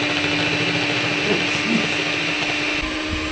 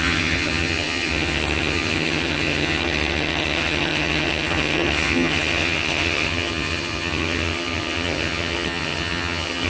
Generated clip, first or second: second